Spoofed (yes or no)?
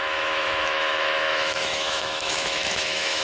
yes